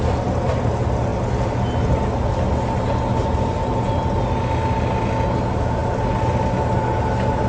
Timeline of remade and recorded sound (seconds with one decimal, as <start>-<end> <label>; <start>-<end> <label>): 0.0-7.5 recorded